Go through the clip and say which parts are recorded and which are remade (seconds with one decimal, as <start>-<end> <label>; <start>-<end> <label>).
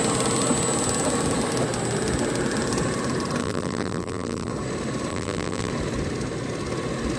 0.0-3.4 recorded; 3.4-4.5 remade; 4.5-5.1 recorded; 5.1-5.7 remade; 5.7-7.2 recorded